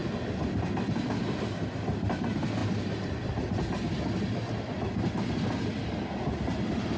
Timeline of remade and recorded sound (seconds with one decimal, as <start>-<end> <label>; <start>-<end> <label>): 0.0-7.0 recorded